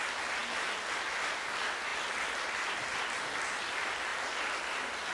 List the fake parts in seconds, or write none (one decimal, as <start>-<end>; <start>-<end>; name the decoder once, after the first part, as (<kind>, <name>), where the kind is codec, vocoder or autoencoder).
0.0-0.4 (vocoder, BigVGAN v2); 1.3-1.9; 2.7-4.1